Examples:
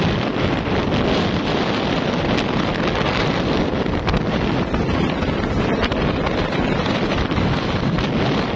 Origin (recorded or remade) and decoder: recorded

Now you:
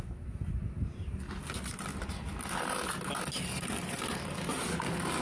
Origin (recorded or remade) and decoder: recorded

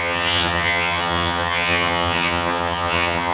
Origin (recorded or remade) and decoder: remade, vocoder, HiFi-GAN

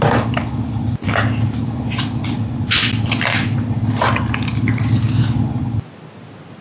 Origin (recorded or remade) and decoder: recorded